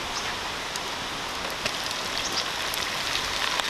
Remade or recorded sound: recorded